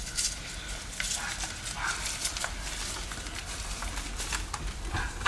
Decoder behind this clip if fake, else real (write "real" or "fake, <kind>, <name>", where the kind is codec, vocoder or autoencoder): real